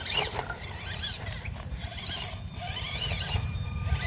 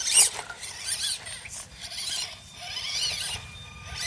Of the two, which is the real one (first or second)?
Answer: second